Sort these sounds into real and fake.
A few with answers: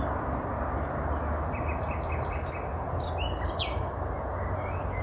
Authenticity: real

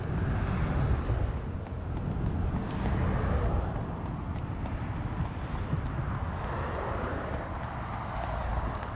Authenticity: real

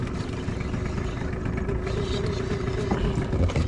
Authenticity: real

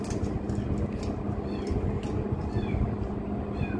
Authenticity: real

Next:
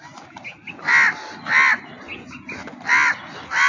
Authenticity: real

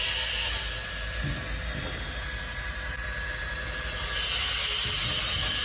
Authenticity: real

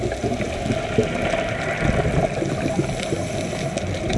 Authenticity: real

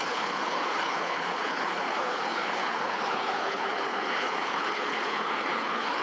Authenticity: fake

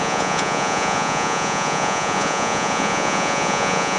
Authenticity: fake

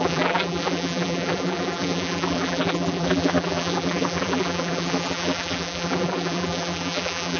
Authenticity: fake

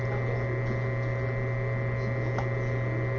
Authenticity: real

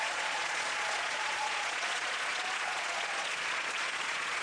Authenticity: fake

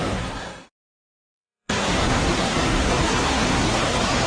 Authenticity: fake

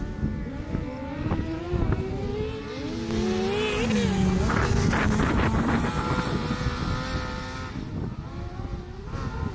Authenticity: real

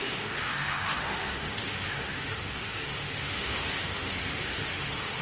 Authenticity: fake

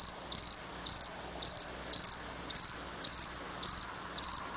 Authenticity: real